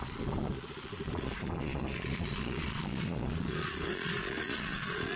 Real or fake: fake